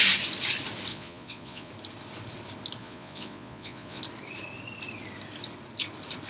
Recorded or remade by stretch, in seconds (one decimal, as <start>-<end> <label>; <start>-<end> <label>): 0.0-0.9 recorded; 0.9-1.7 remade; 1.7-2.8 recorded; 2.8-4.0 remade; 4.0-6.3 recorded